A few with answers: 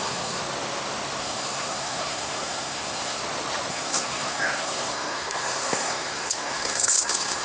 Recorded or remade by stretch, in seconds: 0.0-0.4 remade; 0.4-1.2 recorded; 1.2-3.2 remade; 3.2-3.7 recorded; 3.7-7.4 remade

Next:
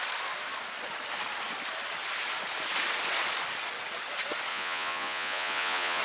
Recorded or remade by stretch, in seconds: 0.0-4.5 recorded; 4.5-6.0 remade

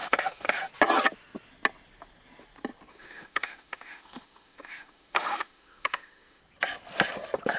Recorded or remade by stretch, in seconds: 0.0-0.7 remade; 0.7-2.9 recorded; 2.9-6.4 remade; 6.4-7.6 recorded